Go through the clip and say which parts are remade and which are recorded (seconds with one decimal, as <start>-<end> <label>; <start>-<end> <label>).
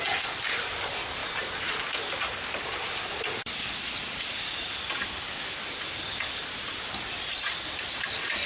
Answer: 0.0-8.5 recorded